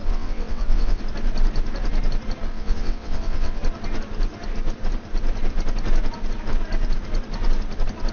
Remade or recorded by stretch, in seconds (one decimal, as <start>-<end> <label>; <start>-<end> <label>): 0.0-1.0 remade; 1.0-2.5 recorded; 2.5-3.6 remade; 3.6-8.1 recorded